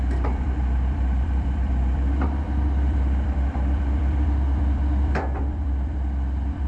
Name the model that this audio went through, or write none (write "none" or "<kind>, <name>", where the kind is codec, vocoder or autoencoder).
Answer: vocoder, BigVGAN v2